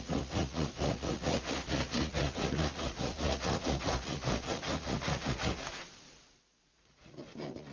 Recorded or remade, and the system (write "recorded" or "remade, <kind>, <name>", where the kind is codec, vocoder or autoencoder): remade, vocoder, Vocos